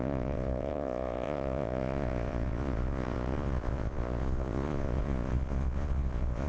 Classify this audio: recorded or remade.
remade